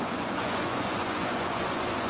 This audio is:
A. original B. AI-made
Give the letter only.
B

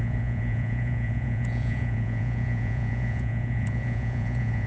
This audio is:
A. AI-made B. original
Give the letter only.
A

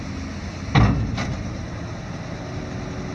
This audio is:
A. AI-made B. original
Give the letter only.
B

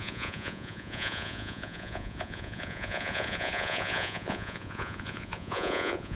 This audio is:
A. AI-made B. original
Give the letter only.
A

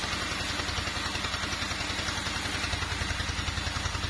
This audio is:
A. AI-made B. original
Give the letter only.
B